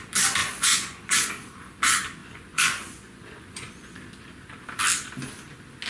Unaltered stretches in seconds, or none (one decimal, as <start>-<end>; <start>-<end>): 0.0-0.4; 1.3-2.2; 4.0-5.9